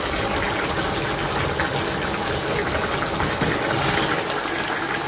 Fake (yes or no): no